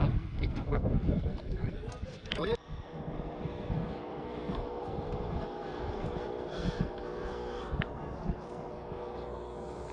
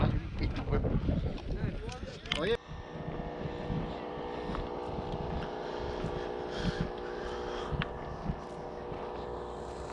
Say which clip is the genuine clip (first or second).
second